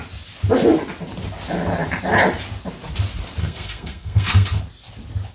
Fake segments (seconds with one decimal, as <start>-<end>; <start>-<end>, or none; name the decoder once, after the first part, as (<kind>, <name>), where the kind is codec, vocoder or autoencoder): 3.4-4.6 (codec, SNAC)